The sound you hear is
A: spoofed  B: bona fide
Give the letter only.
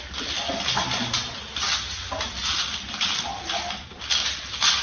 B